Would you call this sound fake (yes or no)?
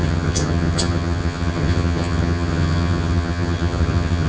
yes